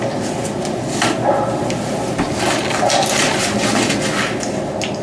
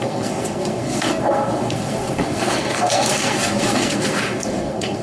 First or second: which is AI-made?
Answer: second